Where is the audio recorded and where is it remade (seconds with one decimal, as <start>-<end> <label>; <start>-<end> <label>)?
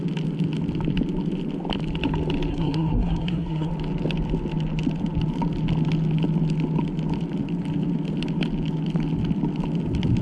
0.0-2.5 recorded; 2.5-3.7 remade; 3.7-10.2 recorded